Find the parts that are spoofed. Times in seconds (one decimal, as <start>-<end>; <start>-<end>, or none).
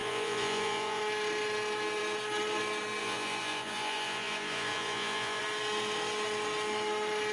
0.0-1.0; 3.0-5.4